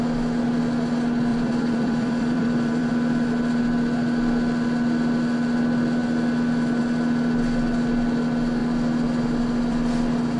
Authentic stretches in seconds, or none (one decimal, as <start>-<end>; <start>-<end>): 0.0-1.3; 2.9-10.4